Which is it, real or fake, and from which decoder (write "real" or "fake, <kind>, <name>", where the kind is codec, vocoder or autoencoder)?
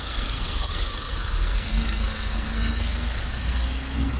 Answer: fake, codec, SNAC